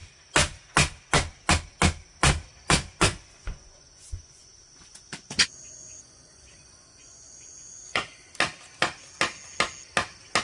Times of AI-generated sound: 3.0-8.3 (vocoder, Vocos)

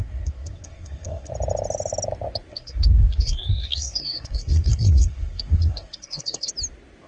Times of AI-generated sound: 0.0-1.3 (codec, SNAC); 2.5-6.5

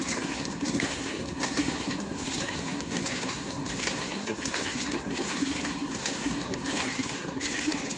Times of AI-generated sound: 0.0-8.0 (codec, SNAC)

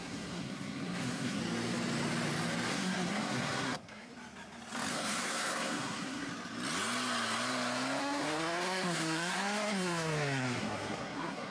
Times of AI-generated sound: 0.0-1.4 (codec, SNAC); 2.7-4.1; 4.9-6.3; 8.0-11.5